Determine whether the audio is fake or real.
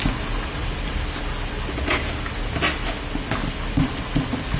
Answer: real